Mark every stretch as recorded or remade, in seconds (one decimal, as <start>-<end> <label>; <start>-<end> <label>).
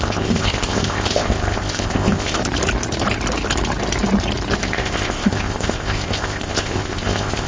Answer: 0.0-2.4 remade; 2.4-4.6 recorded; 4.6-7.5 remade